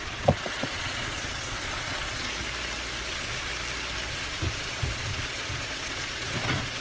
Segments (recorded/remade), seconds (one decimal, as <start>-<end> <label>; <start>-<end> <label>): 0.0-2.3 remade; 2.3-3.1 recorded; 3.1-3.5 remade; 3.5-4.1 recorded; 4.1-6.8 remade